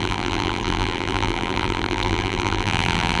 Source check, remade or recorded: remade